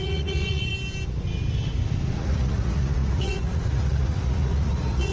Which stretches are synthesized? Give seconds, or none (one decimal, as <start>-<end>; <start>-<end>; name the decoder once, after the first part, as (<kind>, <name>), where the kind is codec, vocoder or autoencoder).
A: 0.0-0.7 (vocoder, Vocos); 2.2-5.1